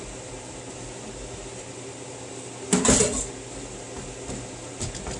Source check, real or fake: real